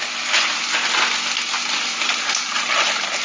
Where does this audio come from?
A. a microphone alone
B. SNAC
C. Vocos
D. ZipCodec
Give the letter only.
A